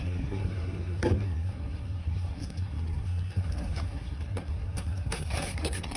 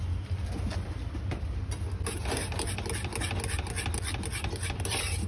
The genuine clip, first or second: second